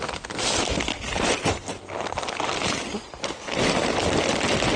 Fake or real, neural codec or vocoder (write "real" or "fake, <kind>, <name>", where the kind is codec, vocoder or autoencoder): real